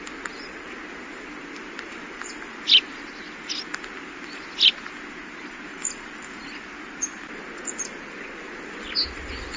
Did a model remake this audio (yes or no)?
no